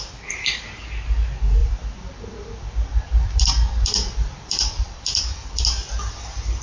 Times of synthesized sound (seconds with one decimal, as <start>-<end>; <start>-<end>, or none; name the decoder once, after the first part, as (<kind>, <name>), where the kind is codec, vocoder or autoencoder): 1.6-5.6 (vocoder, BigVGAN v2)